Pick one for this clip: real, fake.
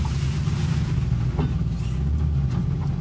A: real